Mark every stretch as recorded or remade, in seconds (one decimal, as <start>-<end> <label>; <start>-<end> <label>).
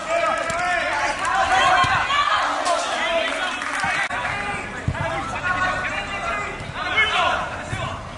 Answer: 0.0-8.2 recorded